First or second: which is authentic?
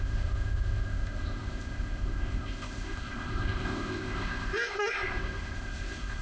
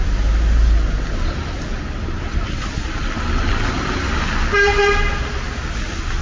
second